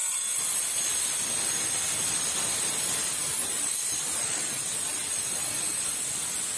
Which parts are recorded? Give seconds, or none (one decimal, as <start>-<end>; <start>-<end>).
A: 0.0-6.6